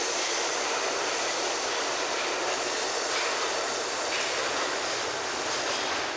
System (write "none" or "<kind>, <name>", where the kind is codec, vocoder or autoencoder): none